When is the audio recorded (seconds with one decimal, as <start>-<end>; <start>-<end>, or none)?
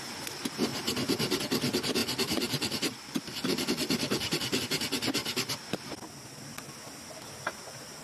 0.0-2.0; 4.6-8.0